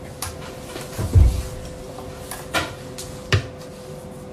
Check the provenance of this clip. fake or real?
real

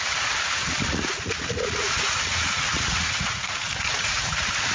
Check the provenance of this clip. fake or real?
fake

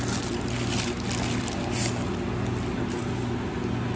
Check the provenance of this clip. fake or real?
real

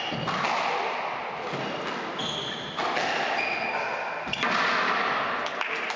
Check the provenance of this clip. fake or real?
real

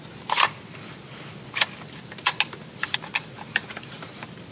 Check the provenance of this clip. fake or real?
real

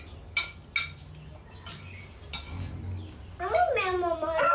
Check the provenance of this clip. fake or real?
real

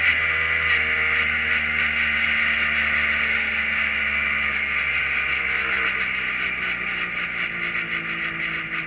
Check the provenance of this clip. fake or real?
real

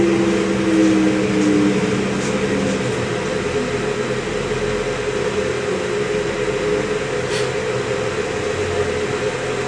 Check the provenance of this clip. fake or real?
real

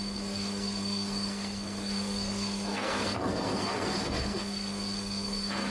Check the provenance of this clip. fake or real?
fake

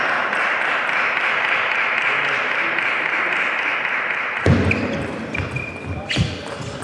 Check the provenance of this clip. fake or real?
real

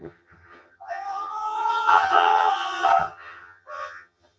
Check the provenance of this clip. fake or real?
fake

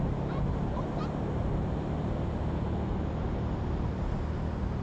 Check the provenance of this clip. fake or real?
real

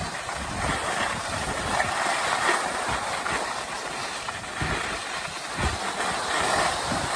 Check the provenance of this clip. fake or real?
real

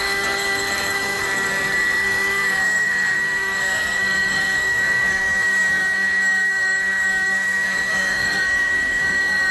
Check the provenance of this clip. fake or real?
fake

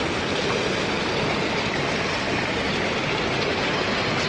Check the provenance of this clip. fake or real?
real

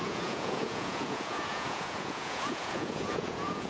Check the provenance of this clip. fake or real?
fake